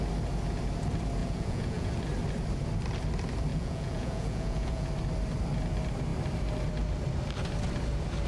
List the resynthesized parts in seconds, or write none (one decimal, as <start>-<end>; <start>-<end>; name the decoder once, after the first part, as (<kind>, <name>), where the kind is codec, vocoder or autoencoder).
1.2-1.9 (vocoder, Vocos); 3.5-4.9